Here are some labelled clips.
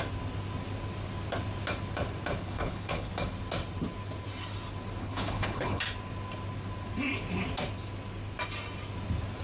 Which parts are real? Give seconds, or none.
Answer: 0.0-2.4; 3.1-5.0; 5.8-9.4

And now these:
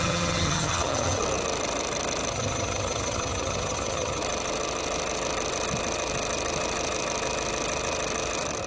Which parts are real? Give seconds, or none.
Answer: 1.2-2.3; 4.2-8.7

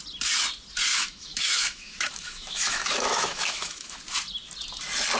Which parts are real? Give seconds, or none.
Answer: 0.0-0.9; 4.0-5.2

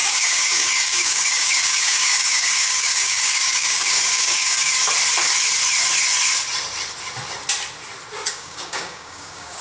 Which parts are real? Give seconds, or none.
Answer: 4.8-8.3

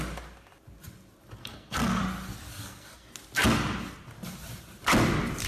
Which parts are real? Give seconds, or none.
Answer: 0.0-1.4; 2.0-2.5; 3.1-5.5

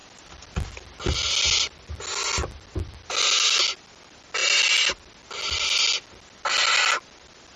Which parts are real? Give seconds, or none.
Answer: 0.0-7.6